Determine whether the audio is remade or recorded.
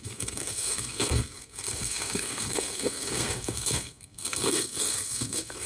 remade